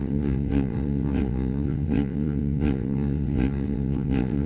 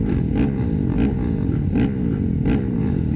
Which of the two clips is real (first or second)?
second